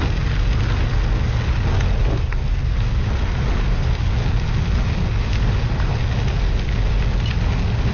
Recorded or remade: recorded